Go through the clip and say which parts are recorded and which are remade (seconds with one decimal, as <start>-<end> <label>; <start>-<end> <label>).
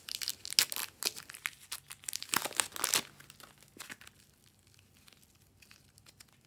0.0-6.5 recorded